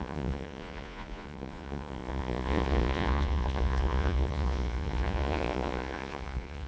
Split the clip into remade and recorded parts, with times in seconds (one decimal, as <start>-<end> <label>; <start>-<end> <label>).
0.0-6.7 remade